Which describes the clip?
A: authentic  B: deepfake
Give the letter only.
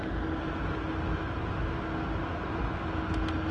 A